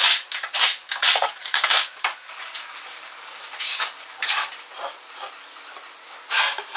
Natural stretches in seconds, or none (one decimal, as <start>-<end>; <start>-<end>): 0.0-0.4; 4.5-6.8